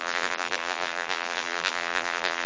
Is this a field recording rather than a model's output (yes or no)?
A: no